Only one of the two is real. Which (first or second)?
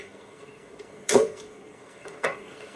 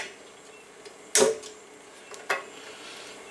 second